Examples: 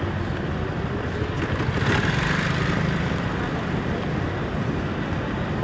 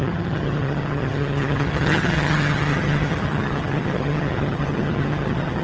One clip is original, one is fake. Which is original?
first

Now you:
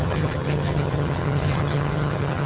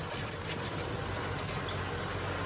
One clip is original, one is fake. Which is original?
second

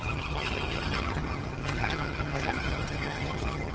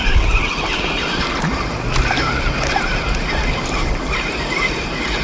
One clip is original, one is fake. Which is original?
second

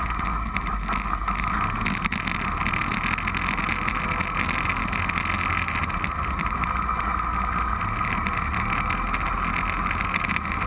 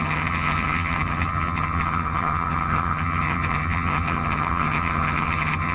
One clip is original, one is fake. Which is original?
first